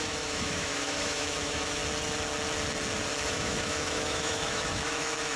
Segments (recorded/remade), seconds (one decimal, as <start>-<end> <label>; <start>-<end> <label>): 0.0-1.8 remade; 1.8-3.3 recorded; 3.3-5.4 remade